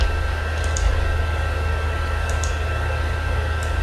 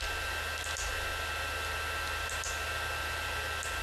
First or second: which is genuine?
second